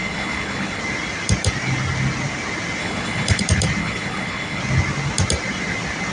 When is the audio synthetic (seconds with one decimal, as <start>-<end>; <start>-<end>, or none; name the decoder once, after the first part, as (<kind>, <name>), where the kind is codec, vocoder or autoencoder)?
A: 0.0-0.8 (codec, HILCodec); 2.8-3.4; 3.8-4.6

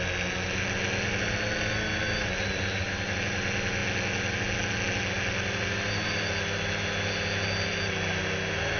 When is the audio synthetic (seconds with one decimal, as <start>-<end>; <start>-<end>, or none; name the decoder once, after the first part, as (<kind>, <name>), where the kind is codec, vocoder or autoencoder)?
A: none

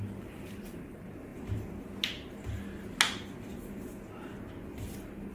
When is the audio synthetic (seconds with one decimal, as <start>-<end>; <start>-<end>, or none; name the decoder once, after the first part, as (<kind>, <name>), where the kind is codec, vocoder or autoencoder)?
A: none

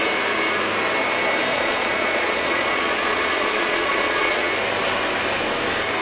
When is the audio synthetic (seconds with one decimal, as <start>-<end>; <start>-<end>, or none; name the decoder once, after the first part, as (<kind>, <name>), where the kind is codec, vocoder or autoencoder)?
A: 1.5-4.5 (vocoder, Vocos)

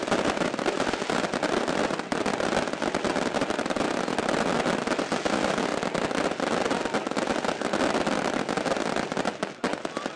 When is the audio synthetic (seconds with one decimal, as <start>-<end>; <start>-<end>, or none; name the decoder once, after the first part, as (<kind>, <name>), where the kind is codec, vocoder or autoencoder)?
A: none

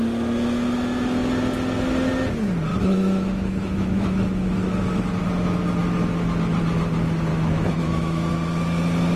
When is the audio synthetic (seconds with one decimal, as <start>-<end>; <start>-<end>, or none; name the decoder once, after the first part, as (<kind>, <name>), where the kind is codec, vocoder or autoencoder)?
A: 2.7-4.8 (autoencoder, DAC-VAE); 7.3-8.3

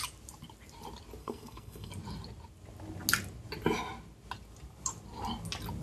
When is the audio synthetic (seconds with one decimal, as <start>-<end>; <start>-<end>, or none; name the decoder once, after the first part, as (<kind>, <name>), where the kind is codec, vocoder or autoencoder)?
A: 1.2-1.9 (codec, SNAC)

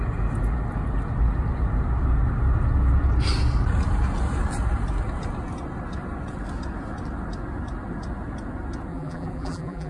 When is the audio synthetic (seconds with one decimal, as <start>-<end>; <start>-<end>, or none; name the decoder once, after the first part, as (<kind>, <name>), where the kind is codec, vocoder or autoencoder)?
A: 8.9-9.9 (vocoder, BigVGAN v2)